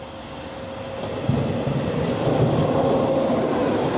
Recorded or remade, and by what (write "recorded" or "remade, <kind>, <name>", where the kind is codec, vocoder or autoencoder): recorded